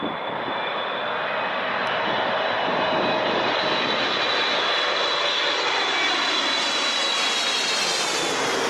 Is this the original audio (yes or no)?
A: yes